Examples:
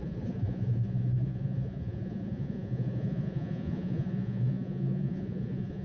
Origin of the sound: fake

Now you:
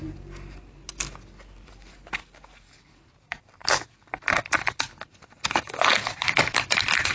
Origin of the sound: real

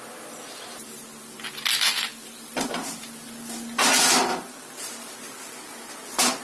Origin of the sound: real